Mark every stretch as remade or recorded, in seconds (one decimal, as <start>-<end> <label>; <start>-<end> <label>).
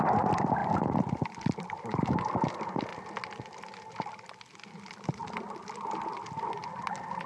0.0-0.6 recorded; 0.6-2.1 remade; 2.1-7.3 recorded